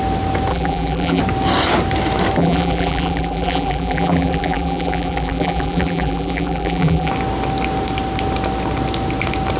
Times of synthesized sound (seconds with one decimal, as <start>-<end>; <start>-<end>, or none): 0.5-1.2; 2.4-7.1